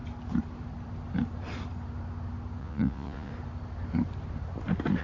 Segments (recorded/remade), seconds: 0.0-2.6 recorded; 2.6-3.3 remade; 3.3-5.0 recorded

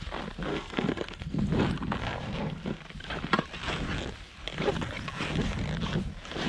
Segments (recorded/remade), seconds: 0.0-0.5 recorded; 0.5-1.4 remade; 1.4-2.0 recorded; 2.0-2.8 remade; 2.8-6.5 recorded